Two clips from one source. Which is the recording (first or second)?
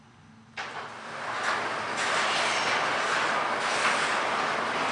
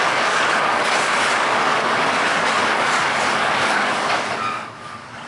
first